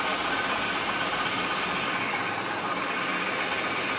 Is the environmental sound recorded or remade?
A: recorded